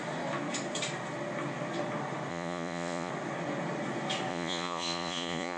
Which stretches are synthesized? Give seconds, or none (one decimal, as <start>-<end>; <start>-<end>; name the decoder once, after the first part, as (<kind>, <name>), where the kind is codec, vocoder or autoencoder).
2.3-3.1 (vocoder, Vocos); 4.3-5.6